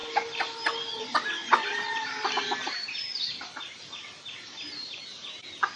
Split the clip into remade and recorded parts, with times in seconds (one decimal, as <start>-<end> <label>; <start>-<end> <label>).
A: 0.0-5.8 recorded